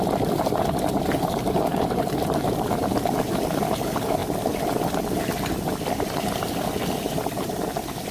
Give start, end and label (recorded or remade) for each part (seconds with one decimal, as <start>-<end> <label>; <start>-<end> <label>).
0.0-4.2 remade; 4.2-7.0 recorded; 7.0-8.1 remade